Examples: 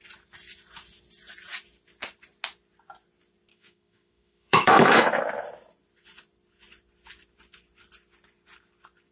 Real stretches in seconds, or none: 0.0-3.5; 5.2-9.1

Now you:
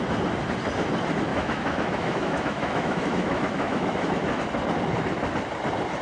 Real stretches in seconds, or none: 0.0-1.3; 4.4-6.0

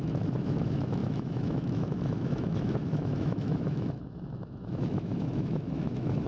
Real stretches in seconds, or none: none